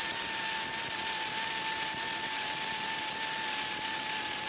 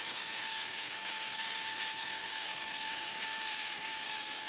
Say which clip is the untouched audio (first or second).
first